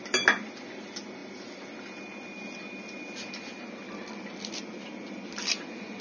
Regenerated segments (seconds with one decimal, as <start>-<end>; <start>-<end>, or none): none